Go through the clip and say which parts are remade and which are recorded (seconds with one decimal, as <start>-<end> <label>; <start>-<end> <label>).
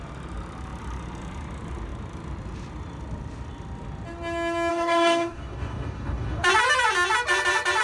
0.0-4.7 recorded; 4.7-6.4 remade; 6.4-7.8 recorded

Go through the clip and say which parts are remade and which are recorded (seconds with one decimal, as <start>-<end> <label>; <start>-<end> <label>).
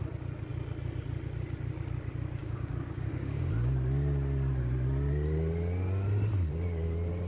0.0-2.4 recorded; 2.4-3.5 remade; 3.5-7.3 recorded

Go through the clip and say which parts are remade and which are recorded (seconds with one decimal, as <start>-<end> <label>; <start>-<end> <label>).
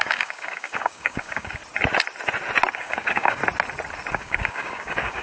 0.0-1.6 remade; 1.6-2.7 recorded; 2.7-3.4 remade; 3.4-4.1 recorded; 4.1-5.2 remade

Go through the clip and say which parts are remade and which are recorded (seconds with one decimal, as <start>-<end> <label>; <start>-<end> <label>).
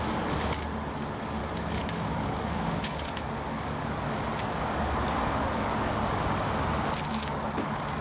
0.0-1.4 recorded; 1.4-6.2 remade; 6.2-7.1 recorded; 7.1-8.0 remade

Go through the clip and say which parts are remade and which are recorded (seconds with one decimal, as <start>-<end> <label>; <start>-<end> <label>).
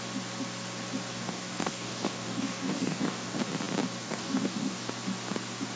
0.0-1.1 recorded; 1.1-3.4 remade; 3.4-4.0 recorded; 4.0-4.9 remade; 4.9-5.8 recorded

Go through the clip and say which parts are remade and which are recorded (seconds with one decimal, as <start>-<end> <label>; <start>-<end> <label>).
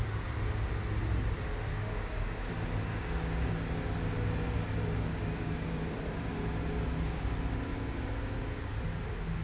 0.0-1.7 recorded; 1.7-2.5 remade; 2.5-2.9 recorded; 2.9-3.5 remade; 3.5-5.1 recorded; 5.1-5.8 remade; 5.8-7.7 recorded; 7.7-8.7 remade; 8.7-9.4 recorded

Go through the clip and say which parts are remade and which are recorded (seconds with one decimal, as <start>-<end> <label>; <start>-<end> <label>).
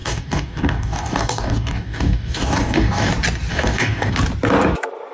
0.0-3.1 remade; 3.1-3.5 recorded; 3.5-4.1 remade; 4.1-5.1 recorded